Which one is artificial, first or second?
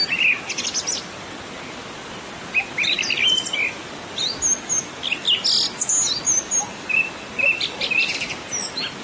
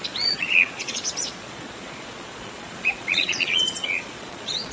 second